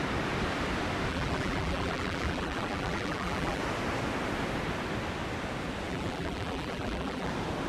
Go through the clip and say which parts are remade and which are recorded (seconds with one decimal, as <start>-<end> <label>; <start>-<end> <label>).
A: 0.0-1.1 recorded; 1.1-3.6 remade; 3.6-5.9 recorded; 5.9-7.3 remade; 7.3-7.7 recorded